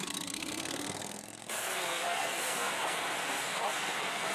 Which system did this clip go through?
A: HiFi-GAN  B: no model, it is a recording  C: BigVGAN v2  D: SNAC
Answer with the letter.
D